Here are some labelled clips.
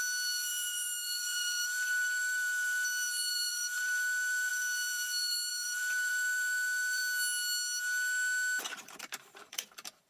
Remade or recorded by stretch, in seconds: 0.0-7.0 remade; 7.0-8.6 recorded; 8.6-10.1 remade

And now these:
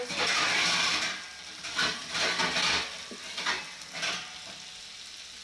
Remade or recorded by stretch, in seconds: 0.0-0.9 recorded; 0.9-1.6 remade; 1.6-5.4 recorded

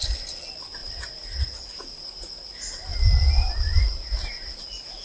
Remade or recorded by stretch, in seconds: 0.0-2.9 recorded; 2.9-4.6 remade; 4.6-5.0 recorded

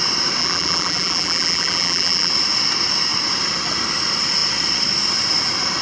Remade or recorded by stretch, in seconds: 0.0-0.4 recorded; 0.4-2.3 remade; 2.3-5.8 recorded

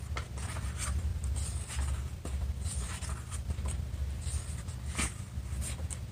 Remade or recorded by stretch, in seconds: 0.0-1.1 recorded; 1.1-4.8 remade; 4.8-6.1 recorded

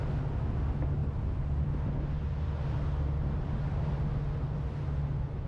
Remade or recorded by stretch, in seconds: 0.0-5.5 recorded

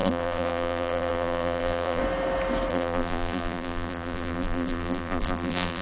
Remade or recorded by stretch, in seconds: 0.0-2.0 remade; 2.0-2.7 recorded; 2.7-5.8 remade